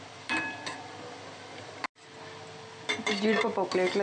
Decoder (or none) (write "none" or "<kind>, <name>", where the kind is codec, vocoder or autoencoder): none